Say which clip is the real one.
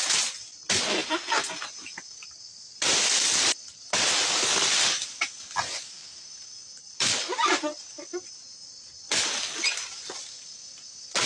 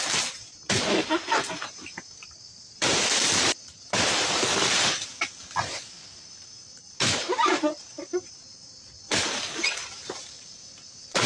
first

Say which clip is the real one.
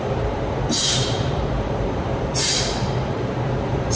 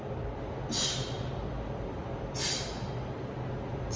second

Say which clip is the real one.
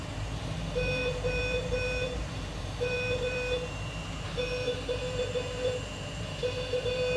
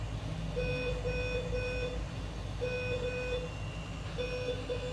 second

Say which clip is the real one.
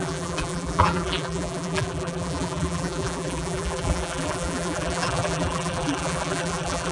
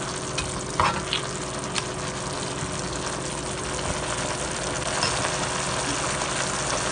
second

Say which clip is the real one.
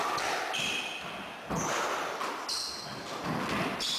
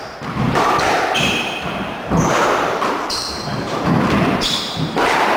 first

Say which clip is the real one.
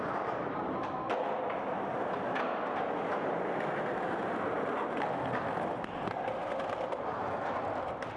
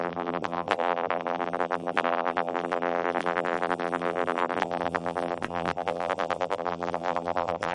first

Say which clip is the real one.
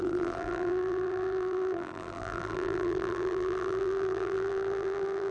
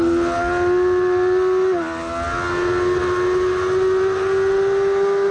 second